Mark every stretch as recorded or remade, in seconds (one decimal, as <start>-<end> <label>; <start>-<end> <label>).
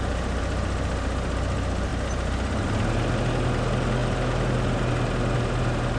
0.0-6.0 recorded